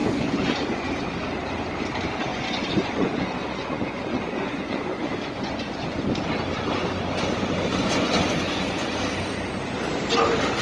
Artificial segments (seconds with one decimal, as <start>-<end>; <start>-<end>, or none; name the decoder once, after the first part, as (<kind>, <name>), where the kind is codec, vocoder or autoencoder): 0.0-0.9 (vocoder, Vocos); 2.3-6.1; 7.7-9.0